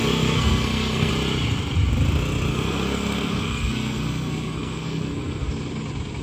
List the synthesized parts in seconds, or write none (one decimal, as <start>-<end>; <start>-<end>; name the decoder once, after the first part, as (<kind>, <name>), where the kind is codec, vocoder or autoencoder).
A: 0.0-1.1 (codec, SNAC); 2.5-5.5

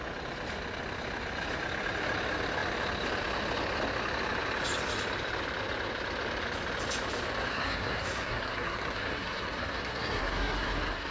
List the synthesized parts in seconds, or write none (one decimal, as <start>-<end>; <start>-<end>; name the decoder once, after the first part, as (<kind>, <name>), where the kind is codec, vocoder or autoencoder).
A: 7.5-11.1 (codec, SNAC)

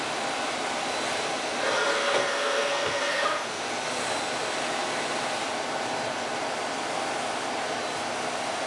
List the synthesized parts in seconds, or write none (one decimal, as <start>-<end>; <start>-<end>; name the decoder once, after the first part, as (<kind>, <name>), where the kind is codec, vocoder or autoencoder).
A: 1.9-3.6 (codec, SNAC)